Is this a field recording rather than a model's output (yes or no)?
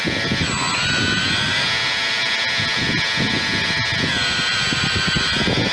yes